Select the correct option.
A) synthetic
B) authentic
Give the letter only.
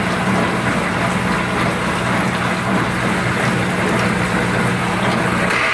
B